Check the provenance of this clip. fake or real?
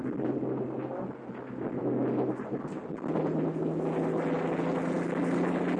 real